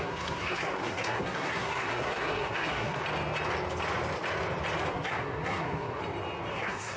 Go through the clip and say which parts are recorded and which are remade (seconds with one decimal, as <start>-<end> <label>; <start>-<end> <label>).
0.0-3.0 remade; 3.0-4.9 recorded; 4.9-6.0 remade; 6.0-6.5 recorded; 6.5-7.0 remade